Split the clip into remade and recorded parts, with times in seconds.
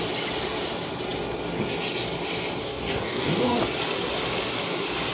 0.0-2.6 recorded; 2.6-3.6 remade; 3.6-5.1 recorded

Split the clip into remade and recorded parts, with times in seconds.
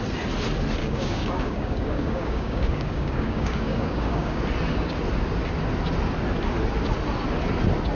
0.0-0.8 recorded; 0.8-4.4 remade; 4.4-7.9 recorded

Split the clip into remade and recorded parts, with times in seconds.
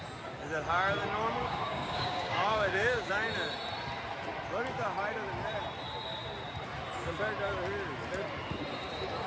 0.0-1.4 recorded; 1.4-3.1 remade; 3.1-9.3 recorded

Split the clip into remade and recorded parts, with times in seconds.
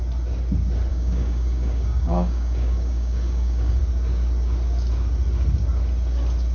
0.0-0.9 recorded; 0.9-3.8 remade; 3.8-6.5 recorded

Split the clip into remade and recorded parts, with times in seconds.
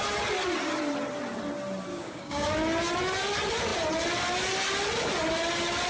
0.0-1.9 recorded; 1.9-2.5 remade; 2.5-5.9 recorded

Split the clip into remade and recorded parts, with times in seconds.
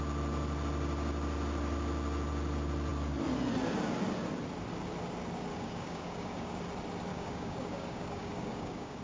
0.0-5.5 recorded; 5.5-6.6 remade; 6.6-7.1 recorded; 7.1-9.0 remade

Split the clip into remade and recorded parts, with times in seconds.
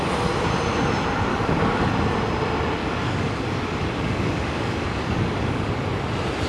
0.0-1.3 recorded; 1.3-1.9 remade; 1.9-2.8 recorded; 2.8-5.7 remade; 5.7-6.5 recorded